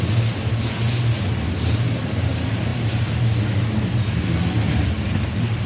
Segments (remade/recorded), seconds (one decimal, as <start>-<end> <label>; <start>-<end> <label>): 0.0-5.7 recorded